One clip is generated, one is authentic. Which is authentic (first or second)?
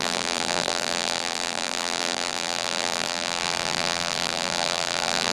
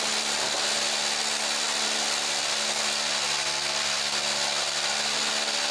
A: second